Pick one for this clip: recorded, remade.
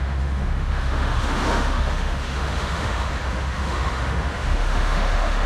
remade